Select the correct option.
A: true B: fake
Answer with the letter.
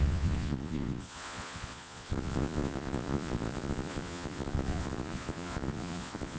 B